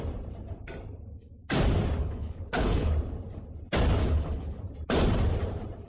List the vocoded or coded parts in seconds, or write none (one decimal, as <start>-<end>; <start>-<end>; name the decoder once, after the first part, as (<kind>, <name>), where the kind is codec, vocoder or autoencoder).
2.0-2.9 (codec, HILCodec); 4.0-4.6